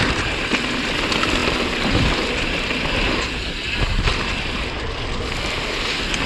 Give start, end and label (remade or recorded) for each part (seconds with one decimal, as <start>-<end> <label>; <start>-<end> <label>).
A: 0.0-6.3 recorded